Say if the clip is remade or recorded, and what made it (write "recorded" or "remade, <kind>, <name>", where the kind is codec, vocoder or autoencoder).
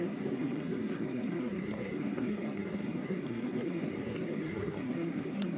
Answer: remade, codec, SNAC